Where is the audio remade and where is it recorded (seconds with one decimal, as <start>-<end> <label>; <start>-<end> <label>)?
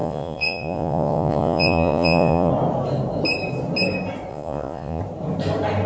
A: 0.0-2.5 remade; 2.5-4.3 recorded; 4.3-5.0 remade; 5.0-5.9 recorded